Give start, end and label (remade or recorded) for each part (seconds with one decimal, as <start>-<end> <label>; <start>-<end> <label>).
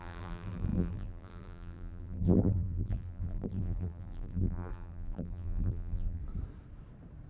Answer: 0.0-6.2 remade; 6.2-7.3 recorded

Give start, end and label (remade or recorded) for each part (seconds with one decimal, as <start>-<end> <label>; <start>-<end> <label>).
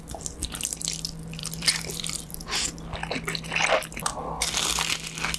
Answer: 0.0-1.4 recorded; 1.4-2.3 remade; 2.3-5.4 recorded